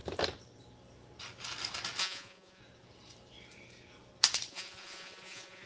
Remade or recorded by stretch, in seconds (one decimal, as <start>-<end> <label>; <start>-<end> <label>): 0.0-2.0 recorded; 2.0-2.6 remade; 2.6-4.5 recorded; 4.5-5.7 remade